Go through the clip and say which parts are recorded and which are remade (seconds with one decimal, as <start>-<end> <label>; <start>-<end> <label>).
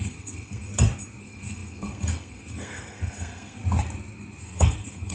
0.0-0.7 remade; 0.7-1.2 recorded; 1.2-3.6 remade; 3.6-4.4 recorded; 4.4-5.1 remade